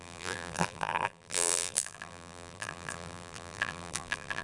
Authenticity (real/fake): fake